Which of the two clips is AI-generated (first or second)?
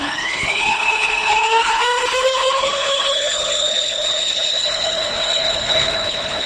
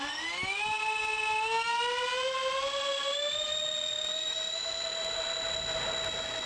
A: first